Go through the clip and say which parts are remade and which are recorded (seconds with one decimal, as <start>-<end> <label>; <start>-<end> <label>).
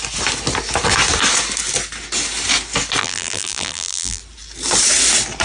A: 0.0-3.0 recorded; 3.0-4.2 remade; 4.2-5.4 recorded